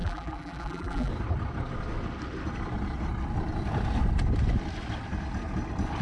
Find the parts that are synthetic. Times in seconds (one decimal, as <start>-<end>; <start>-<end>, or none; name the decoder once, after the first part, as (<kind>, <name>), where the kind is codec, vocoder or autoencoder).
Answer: 0.0-1.1 (vocoder, BigVGAN v2)